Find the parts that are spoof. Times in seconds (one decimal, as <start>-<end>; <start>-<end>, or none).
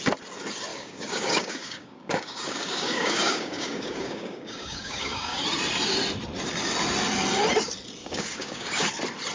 0.7-5.4; 8.0-8.9